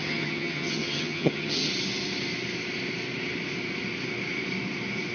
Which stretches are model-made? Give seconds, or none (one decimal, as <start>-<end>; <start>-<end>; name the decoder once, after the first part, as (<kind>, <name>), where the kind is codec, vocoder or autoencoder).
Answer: 0.0-1.7 (vocoder, HiFi-GAN)